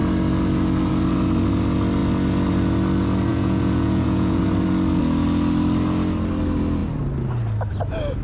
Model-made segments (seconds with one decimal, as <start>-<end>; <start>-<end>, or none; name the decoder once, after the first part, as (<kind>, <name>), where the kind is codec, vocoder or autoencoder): 3.3-4.4 (vocoder, Vocos)

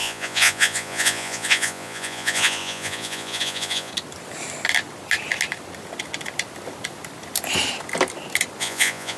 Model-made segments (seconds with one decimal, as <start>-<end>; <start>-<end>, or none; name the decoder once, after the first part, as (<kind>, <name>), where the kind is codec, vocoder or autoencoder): 0.0-3.9 (vocoder, Vocos); 8.6-9.2

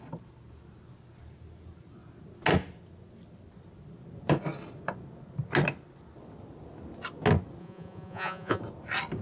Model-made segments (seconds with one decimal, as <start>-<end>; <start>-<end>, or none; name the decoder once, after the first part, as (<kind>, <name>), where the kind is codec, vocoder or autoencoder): 7.6-8.6 (vocoder, Vocos)

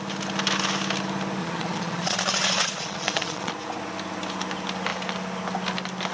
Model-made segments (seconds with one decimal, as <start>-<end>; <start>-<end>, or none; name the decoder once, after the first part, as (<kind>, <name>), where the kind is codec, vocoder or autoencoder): 1.4-3.5 (vocoder, Vocos)

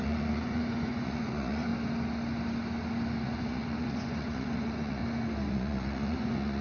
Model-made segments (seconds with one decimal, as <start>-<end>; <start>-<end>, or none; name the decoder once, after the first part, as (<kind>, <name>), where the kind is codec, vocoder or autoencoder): 0.0-1.7 (vocoder, Vocos); 3.2-5.0; 5.5-6.6

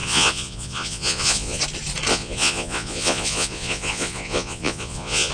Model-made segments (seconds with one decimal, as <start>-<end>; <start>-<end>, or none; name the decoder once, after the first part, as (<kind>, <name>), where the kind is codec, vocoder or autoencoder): 0.0-1.6 (vocoder, Vocos); 2.1-5.3